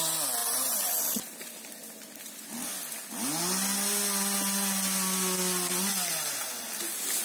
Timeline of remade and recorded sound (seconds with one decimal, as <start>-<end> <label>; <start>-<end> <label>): 0.0-0.4 recorded; 0.4-1.0 remade; 1.0-7.2 recorded